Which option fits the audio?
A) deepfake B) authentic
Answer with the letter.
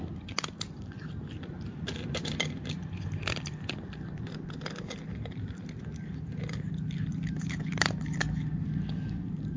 A